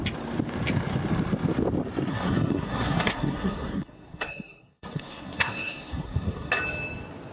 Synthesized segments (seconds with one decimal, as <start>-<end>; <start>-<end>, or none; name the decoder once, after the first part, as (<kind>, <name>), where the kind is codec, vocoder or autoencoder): 2.1-6.5 (codec, SNAC)